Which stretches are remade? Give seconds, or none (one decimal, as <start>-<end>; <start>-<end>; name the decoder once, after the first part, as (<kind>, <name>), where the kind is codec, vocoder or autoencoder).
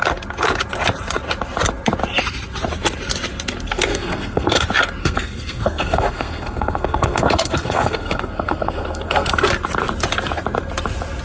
3.9-4.6 (codec, SNAC); 5.0-9.3